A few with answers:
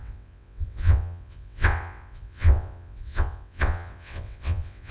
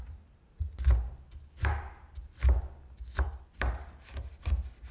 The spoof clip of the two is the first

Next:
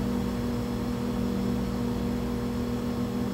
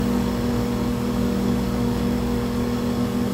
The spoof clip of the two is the second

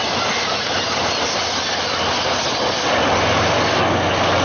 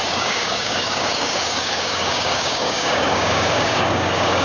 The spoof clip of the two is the second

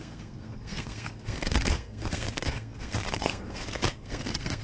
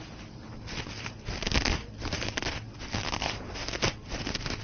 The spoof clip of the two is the first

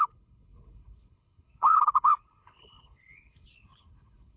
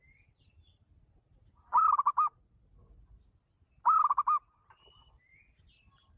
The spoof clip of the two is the first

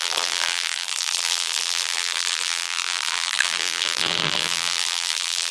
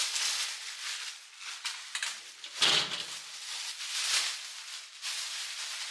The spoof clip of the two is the first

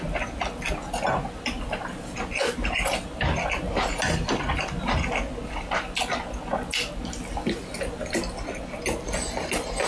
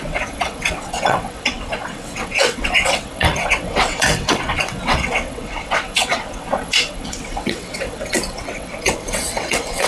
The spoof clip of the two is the second